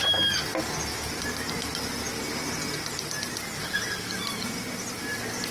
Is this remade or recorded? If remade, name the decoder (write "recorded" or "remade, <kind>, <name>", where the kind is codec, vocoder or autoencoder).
recorded